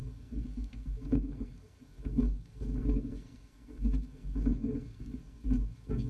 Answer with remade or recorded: remade